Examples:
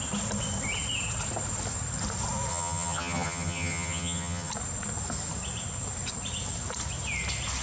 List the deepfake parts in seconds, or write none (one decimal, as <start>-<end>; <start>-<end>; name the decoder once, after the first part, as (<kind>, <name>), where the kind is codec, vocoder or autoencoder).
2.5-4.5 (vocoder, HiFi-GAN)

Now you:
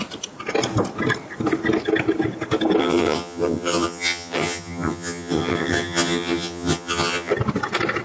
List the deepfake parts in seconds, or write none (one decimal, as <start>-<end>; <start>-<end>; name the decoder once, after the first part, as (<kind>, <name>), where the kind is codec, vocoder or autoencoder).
2.8-7.3 (vocoder, HiFi-GAN)

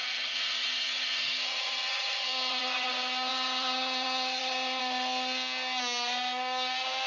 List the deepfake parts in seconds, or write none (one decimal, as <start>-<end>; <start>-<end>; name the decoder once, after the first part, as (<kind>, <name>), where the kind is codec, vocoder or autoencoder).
0.0-2.9 (vocoder, HiFi-GAN); 3.3-4.8

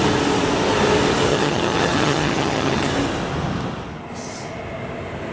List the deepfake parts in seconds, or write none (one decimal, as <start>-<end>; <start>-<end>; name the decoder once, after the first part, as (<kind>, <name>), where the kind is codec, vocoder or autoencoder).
1.3-2.9 (vocoder, HiFi-GAN)